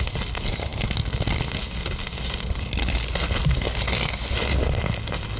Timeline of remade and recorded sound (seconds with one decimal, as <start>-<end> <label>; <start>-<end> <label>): 0.0-5.4 recorded